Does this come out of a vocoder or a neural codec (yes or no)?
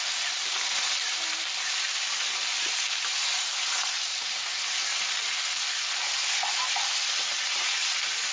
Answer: no